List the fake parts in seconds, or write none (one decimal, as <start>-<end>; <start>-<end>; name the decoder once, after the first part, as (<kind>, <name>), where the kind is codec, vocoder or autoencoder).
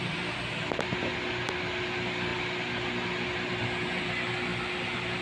none